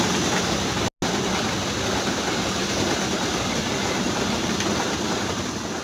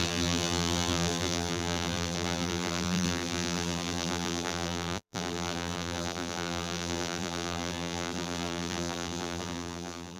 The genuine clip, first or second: first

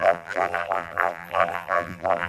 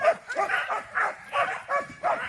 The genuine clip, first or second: second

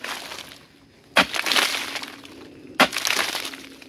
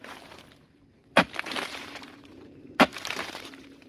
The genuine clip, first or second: first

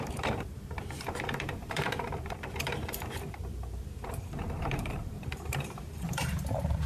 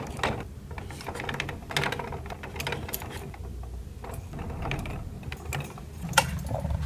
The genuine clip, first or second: second